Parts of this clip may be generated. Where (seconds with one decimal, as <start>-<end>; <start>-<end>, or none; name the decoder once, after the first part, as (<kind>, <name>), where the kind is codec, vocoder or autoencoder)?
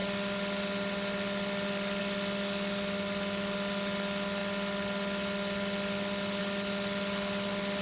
none